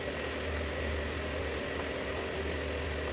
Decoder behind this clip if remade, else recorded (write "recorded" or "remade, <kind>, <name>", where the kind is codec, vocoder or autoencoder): recorded